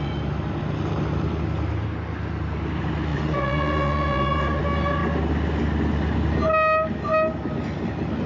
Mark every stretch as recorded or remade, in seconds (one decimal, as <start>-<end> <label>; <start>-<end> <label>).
0.0-3.1 recorded; 3.1-4.6 remade; 4.6-8.3 recorded